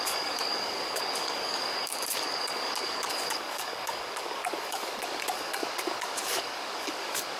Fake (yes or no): yes